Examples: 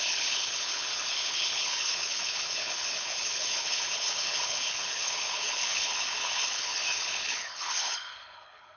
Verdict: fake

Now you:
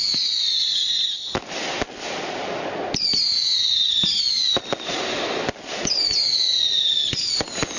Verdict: real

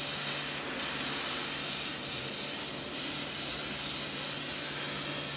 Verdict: real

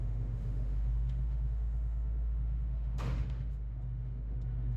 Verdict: fake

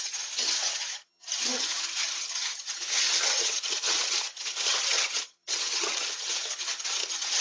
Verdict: fake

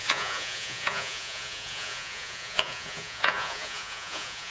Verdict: fake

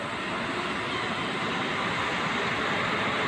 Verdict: real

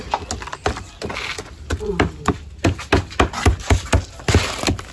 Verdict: real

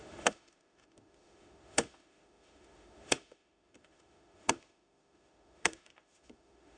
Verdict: fake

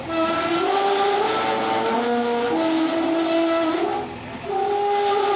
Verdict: real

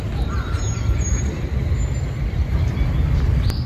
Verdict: real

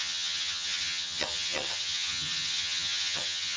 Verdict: fake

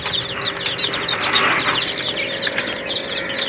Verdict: real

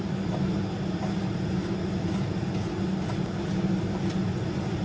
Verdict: real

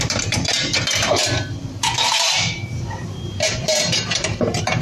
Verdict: fake